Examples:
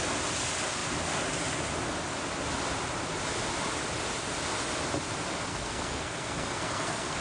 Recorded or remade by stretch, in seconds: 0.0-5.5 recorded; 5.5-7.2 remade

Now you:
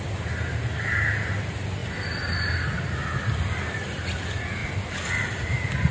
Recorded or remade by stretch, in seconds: 0.0-5.9 recorded

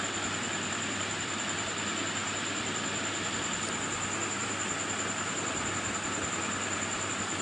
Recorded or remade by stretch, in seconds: 0.0-7.4 recorded

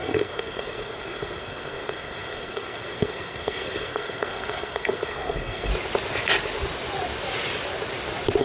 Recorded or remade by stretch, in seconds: 0.0-5.7 remade; 5.7-8.4 recorded